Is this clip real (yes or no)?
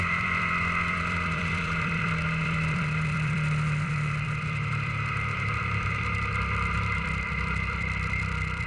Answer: no